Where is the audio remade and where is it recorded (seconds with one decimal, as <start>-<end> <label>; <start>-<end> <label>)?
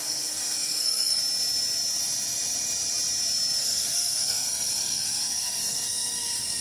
0.0-1.2 remade; 1.2-3.6 recorded; 3.6-6.6 remade